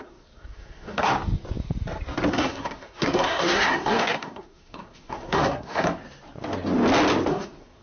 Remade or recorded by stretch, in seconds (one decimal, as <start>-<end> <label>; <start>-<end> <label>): 0.0-1.1 remade; 1.1-2.3 recorded; 2.3-6.0 remade; 6.0-7.3 recorded; 7.3-7.8 remade